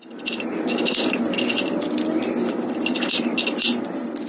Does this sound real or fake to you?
real